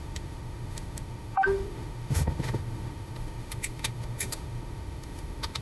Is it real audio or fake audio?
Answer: fake